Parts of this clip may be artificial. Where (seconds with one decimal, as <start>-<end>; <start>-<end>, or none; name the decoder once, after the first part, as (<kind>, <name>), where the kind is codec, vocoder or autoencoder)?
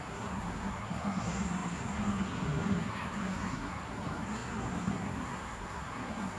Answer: 0.0-6.4 (codec, SNAC)